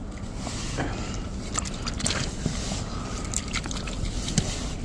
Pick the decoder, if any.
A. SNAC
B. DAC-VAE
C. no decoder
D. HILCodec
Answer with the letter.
C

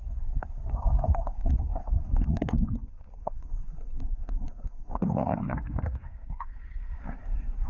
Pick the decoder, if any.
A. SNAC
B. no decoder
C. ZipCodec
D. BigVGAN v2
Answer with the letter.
A